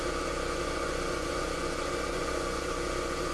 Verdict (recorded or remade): remade